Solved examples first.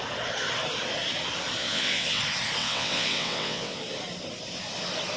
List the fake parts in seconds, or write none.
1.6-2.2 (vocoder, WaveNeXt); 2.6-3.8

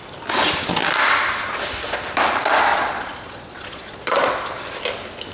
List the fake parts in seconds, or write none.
2.7-4.3 (vocoder, Vocos)

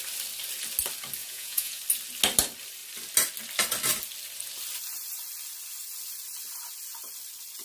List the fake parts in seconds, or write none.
1.2-1.8 (vocoder, Vocos)